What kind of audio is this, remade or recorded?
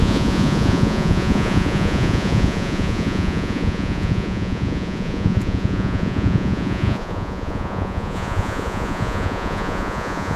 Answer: remade